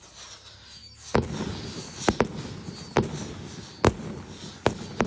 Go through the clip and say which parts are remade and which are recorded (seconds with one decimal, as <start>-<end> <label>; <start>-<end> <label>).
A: 0.0-5.1 recorded

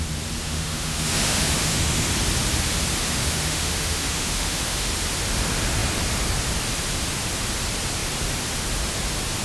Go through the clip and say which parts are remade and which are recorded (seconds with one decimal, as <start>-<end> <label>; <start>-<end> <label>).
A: 0.0-0.4 recorded; 0.4-2.1 remade; 2.1-3.2 recorded; 3.2-4.9 remade; 4.9-9.4 recorded

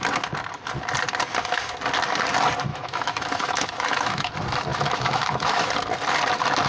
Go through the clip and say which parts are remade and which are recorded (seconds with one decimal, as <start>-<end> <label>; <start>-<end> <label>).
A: 0.0-2.7 recorded; 2.7-4.3 remade; 4.3-4.7 recorded; 4.7-5.7 remade; 5.7-6.7 recorded

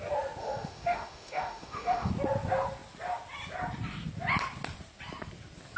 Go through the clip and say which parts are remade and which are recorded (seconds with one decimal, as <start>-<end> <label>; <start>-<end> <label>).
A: 0.0-0.4 recorded; 0.4-2.1 remade; 2.1-5.8 recorded

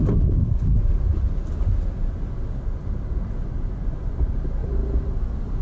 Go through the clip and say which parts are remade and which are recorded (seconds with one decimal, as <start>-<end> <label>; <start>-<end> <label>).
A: 0.0-5.6 recorded

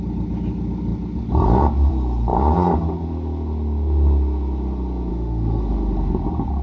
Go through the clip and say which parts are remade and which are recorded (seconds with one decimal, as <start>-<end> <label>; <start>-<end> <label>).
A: 0.0-5.1 recorded; 5.1-5.6 remade; 5.6-6.6 recorded

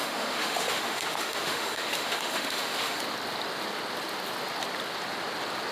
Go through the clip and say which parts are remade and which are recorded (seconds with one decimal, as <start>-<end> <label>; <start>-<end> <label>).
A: 0.0-3.0 remade; 3.0-5.7 recorded

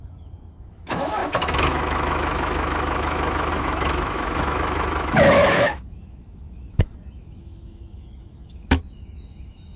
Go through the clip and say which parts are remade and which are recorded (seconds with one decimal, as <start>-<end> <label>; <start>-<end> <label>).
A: 0.0-9.8 remade